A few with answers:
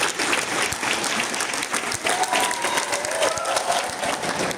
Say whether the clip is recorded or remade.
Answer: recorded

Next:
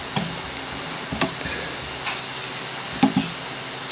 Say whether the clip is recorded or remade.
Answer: recorded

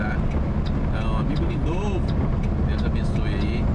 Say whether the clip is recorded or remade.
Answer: recorded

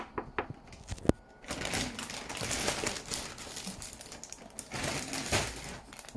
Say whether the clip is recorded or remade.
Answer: recorded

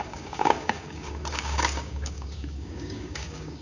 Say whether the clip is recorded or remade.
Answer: remade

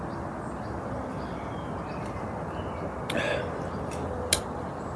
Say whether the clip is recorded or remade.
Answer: recorded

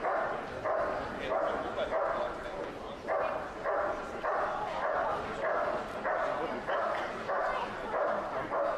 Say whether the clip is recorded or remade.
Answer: recorded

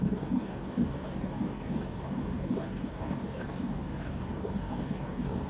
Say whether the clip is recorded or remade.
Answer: remade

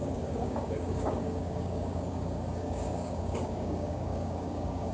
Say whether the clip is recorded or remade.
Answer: remade